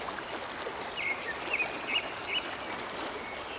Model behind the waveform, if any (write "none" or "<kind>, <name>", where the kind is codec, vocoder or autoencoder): none